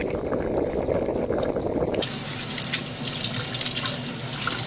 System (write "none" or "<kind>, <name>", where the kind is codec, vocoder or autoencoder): none